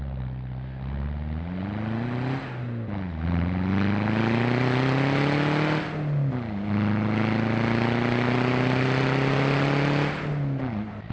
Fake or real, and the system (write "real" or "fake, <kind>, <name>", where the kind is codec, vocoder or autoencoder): real